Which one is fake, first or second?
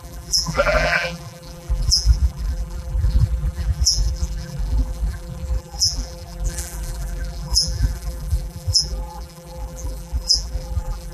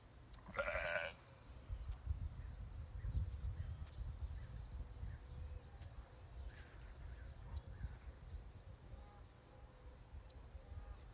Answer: first